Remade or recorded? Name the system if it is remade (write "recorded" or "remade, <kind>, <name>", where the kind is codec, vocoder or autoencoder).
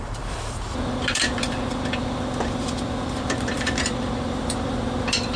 remade, vocoder, BigVGAN v2